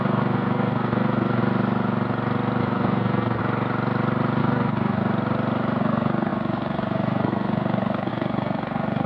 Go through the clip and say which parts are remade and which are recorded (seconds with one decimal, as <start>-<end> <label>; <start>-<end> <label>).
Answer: 0.0-1.4 remade; 1.4-2.6 recorded; 2.6-3.4 remade; 3.4-4.4 recorded; 4.4-5.0 remade; 5.0-5.8 recorded; 5.8-9.1 remade

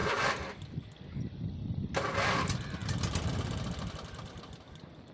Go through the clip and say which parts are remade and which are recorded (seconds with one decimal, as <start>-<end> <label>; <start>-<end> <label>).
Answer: 0.0-5.1 recorded

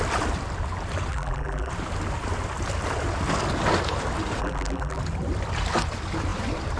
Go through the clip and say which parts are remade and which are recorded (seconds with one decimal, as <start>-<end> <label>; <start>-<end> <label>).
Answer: 0.0-1.1 recorded; 1.1-1.7 remade; 1.7-4.4 recorded; 4.4-5.0 remade; 5.0-6.8 recorded

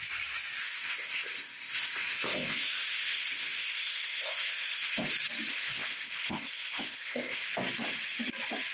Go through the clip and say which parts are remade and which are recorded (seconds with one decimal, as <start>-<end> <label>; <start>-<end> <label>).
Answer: 0.0-0.6 recorded; 0.6-5.1 remade; 5.1-5.5 recorded; 5.5-7.5 remade; 7.5-8.7 recorded

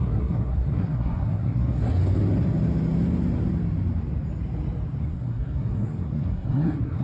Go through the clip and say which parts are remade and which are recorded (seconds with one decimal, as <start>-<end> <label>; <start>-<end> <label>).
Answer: 0.0-2.0 remade; 2.0-5.0 recorded; 5.0-7.0 remade

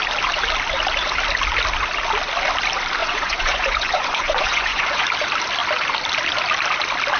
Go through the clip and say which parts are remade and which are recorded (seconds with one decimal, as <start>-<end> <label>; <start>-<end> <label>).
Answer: 0.0-3.0 recorded; 3.0-5.1 remade; 5.1-7.2 recorded